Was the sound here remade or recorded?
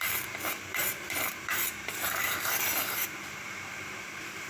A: remade